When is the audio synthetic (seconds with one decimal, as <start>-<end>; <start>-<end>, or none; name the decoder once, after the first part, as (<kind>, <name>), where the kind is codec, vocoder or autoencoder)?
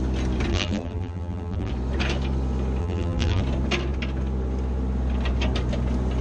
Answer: 0.5-1.7 (vocoder, BigVGAN v2); 2.8-3.4